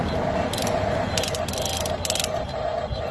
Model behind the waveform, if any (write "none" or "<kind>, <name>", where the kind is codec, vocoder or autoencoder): none